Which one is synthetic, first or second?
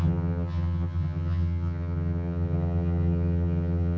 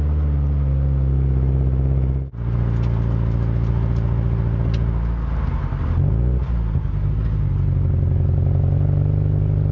first